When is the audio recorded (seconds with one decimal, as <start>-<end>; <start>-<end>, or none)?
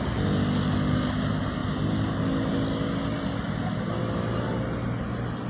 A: 0.0-5.5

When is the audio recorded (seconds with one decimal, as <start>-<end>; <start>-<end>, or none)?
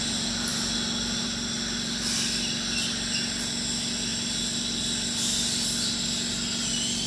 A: 0.0-7.1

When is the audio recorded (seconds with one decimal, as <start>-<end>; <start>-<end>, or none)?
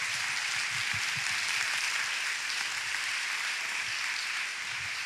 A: 0.0-4.5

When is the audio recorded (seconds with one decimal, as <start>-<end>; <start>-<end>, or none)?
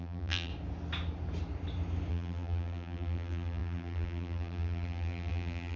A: 0.5-2.1